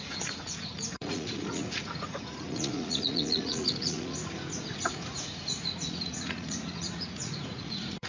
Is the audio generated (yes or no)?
yes